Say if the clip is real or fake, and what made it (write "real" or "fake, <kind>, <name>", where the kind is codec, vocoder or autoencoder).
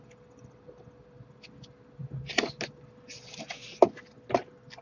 real